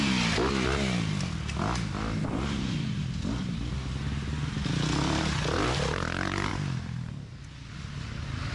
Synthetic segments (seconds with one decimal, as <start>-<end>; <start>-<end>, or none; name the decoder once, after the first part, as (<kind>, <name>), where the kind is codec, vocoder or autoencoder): none